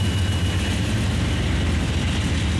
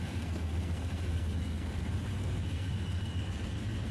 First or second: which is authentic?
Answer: first